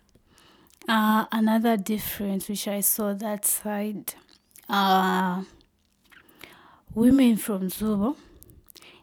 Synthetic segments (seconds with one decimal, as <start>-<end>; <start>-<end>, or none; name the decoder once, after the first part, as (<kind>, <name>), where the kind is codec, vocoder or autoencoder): 6.0-7.7 (vocoder, Vocos)